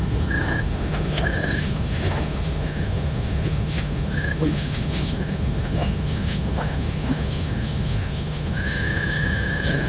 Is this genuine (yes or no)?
no